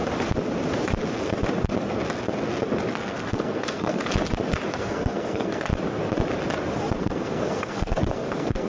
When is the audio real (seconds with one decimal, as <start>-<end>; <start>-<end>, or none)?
0.0-2.9; 4.1-4.7; 5.7-7.0